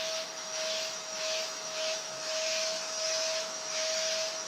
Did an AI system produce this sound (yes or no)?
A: yes